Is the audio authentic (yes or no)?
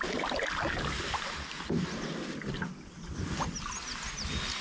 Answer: yes